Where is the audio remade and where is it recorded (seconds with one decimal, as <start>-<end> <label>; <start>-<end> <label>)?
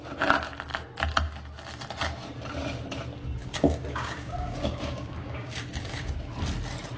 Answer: 0.0-3.4 recorded; 3.4-6.1 remade; 6.1-7.0 recorded